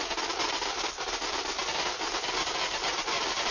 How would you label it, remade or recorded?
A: remade